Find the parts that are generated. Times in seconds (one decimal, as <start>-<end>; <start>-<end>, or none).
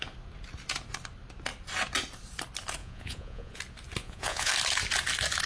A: 2.8-3.6; 4.0-4.5